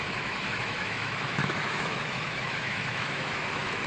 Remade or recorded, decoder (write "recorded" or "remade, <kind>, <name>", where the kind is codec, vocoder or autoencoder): remade, autoencoder, DAC-VAE